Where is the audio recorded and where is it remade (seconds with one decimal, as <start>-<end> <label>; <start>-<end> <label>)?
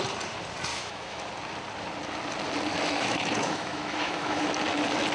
0.0-0.7 recorded; 0.7-1.2 remade; 1.2-2.7 recorded; 2.7-4.5 remade; 4.5-5.1 recorded